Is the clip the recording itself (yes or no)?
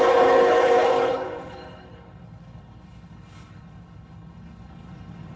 no